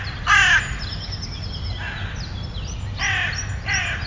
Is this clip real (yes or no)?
yes